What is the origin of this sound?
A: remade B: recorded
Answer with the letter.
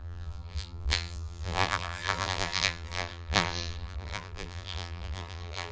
A